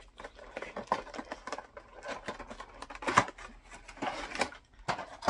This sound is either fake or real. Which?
real